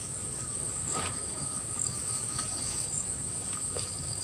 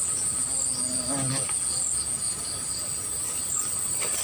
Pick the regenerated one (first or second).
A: first